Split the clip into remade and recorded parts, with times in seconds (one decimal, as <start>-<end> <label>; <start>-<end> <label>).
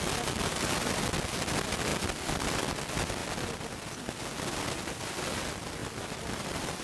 0.0-1.9 recorded; 1.9-2.6 remade; 2.6-5.8 recorded; 5.8-6.8 remade